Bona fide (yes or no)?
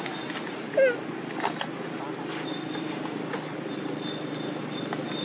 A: yes